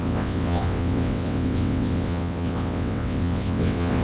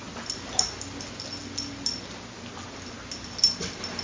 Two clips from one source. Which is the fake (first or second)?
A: first